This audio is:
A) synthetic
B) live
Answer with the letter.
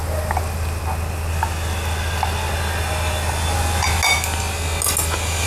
B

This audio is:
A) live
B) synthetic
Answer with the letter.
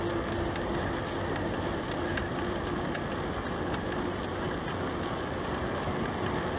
A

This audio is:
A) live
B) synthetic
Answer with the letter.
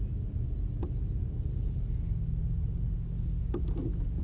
A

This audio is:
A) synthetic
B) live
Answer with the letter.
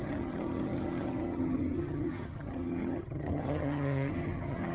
A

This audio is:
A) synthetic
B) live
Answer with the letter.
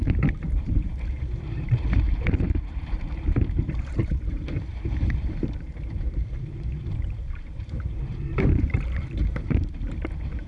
A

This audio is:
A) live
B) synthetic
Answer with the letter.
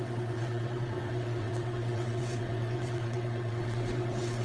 B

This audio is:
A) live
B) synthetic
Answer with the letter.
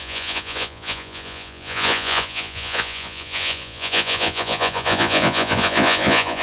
B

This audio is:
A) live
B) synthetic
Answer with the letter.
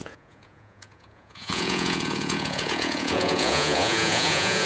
B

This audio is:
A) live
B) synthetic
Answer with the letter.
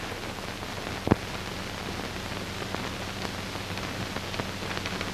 A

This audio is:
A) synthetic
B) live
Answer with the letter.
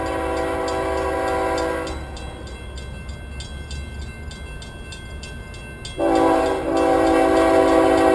B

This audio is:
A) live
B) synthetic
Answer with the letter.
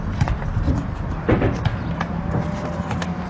A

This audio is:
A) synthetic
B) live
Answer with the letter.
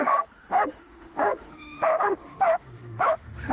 A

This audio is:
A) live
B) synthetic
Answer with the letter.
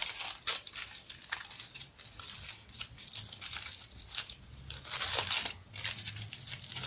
A